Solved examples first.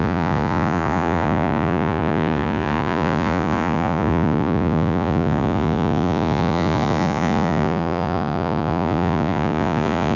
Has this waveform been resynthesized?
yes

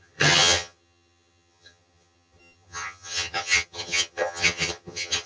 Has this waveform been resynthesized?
yes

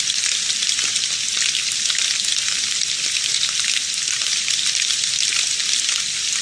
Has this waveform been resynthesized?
no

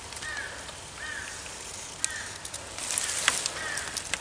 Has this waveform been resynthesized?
no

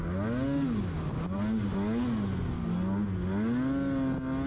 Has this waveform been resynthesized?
no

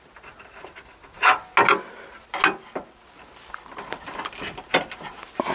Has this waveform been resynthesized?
no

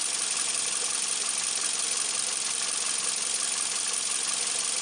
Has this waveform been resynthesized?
no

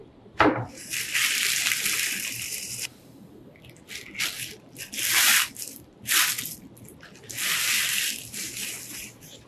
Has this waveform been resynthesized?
yes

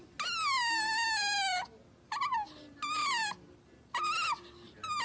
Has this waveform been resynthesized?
no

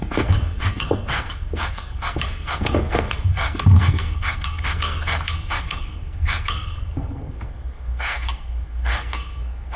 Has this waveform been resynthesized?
yes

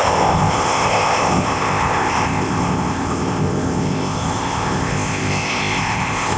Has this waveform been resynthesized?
yes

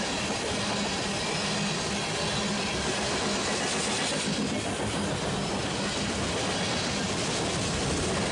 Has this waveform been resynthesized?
no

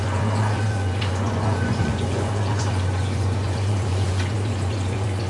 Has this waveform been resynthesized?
yes